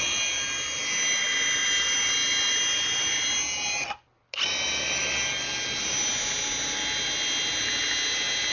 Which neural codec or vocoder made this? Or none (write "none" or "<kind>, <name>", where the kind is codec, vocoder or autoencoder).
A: none